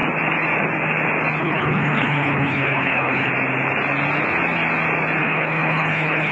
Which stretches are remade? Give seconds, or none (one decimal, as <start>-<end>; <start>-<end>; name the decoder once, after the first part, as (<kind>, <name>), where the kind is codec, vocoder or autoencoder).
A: 1.4-3.3 (codec, HILCodec); 5.2-6.3